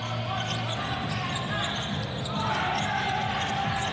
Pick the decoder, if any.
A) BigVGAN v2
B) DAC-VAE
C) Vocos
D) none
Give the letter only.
D